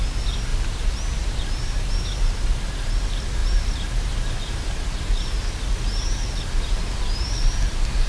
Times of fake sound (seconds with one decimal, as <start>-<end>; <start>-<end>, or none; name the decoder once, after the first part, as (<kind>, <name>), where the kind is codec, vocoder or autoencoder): none

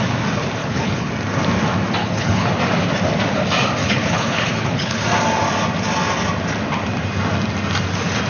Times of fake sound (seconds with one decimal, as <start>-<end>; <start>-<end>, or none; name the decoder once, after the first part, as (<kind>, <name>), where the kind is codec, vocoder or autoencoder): 0.6-1.1 (codec, HILCodec); 2.0-2.5; 3.8-5.0

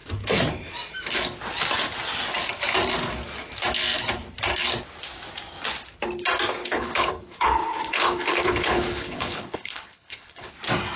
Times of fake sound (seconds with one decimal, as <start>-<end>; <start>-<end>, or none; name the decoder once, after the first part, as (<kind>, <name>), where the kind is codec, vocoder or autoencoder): 6.6-10.5 (codec, HILCodec)

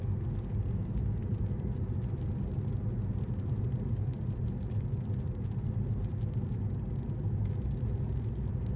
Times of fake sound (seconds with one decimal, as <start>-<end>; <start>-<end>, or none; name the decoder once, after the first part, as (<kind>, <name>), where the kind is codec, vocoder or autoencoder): none

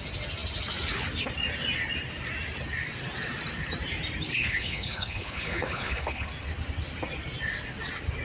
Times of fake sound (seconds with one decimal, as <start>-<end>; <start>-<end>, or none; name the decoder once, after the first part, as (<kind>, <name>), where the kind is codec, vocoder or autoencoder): 4.3-6.3 (codec, HILCodec)

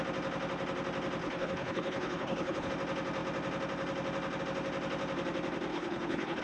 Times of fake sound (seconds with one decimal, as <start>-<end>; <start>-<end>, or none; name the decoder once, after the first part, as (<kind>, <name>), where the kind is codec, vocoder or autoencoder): 1.2-2.7 (codec, HILCodec); 5.7-6.4

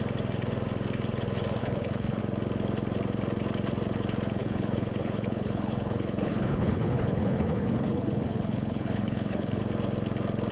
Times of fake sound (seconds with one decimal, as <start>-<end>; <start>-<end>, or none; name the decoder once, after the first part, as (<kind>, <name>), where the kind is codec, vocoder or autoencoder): 1.6-2.2 (codec, HILCodec); 4.4-9.6

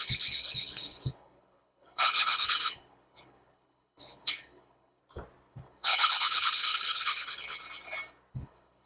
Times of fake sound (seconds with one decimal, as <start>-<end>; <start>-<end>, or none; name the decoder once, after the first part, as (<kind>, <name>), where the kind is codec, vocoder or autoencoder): 0.0-5.0 (codec, HILCodec); 5.5-7.6; 8.3-8.9